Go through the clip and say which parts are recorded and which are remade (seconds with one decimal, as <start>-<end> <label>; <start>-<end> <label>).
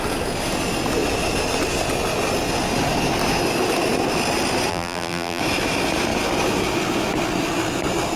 0.0-4.7 recorded; 4.7-5.4 remade; 5.4-8.2 recorded